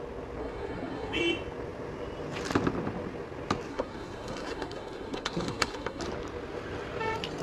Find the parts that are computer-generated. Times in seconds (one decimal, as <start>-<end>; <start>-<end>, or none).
0.4-1.2; 3.7-6.0